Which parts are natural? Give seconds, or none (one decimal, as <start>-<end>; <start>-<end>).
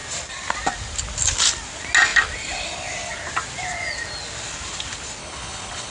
0.0-5.2